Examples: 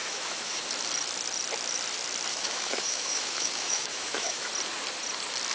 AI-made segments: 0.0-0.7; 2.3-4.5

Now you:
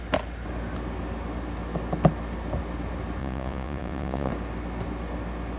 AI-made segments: 3.2-4.3

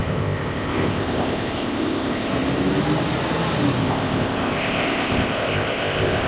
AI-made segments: 0.0-2.3; 3.8-6.3

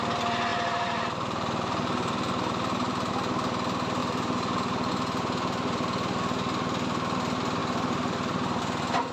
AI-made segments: 0.5-3.1; 4.0-4.9; 7.6-8.6